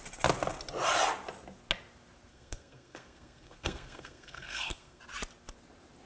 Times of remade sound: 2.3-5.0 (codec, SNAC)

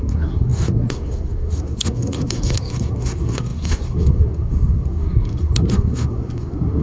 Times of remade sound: 0.0-6.8 (codec, SNAC)

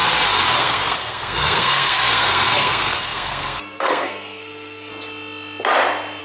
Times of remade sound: 0.6-4.9 (codec, SNAC)

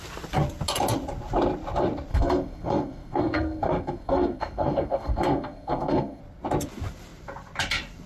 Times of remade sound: 2.1-6.2 (codec, SNAC)

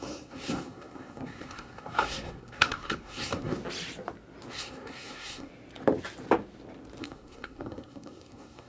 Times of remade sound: 0.0-3.6 (codec, SNAC); 4.5-5.5; 7.0-8.7